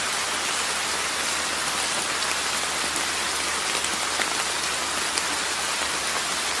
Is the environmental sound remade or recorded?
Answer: recorded